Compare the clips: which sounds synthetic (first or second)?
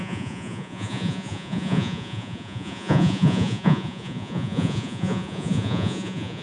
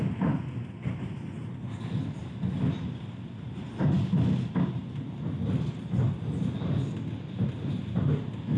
first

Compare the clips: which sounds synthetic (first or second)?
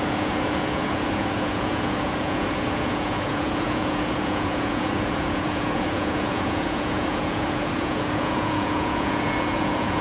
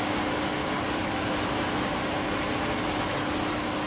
first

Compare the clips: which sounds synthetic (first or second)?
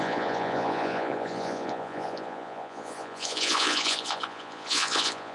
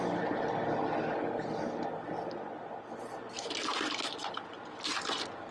first